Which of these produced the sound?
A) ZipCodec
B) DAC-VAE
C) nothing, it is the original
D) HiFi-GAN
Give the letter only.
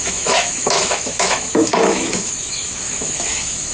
B